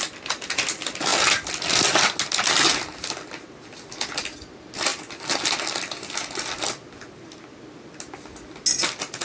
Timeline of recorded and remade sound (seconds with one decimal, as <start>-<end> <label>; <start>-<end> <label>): 0.0-9.2 recorded